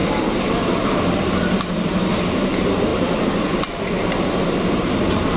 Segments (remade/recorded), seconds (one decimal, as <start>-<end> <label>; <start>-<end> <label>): 0.0-5.4 remade